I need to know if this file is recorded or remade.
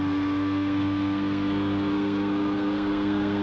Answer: remade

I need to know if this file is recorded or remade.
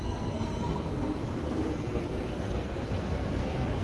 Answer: remade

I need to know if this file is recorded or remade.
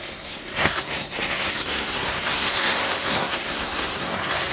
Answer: remade